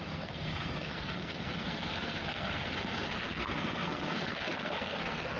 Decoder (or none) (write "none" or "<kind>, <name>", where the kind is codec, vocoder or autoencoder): codec, SNAC